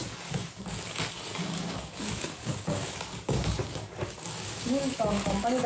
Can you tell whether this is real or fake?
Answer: fake